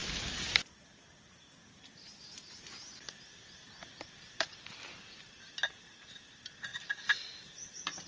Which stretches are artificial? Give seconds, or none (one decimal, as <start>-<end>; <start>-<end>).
none